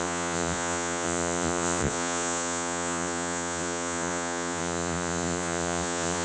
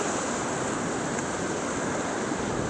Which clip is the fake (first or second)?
first